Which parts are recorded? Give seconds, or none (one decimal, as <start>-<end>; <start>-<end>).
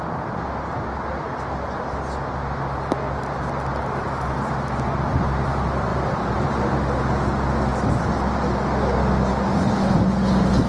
0.0-5.9; 6.6-10.7